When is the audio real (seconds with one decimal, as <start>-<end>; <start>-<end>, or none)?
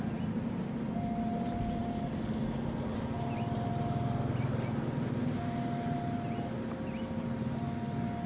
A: 0.0-8.3